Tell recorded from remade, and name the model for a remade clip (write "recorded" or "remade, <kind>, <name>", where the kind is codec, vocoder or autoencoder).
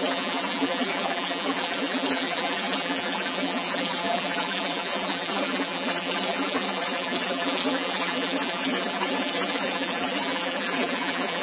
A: remade, vocoder, BigVGAN v2